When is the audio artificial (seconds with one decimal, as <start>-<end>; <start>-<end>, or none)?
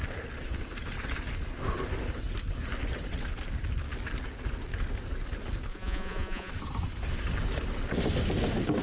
5.7-6.5